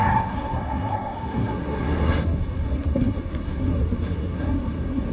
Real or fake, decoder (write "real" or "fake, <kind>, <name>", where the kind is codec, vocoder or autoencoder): fake, codec, SNAC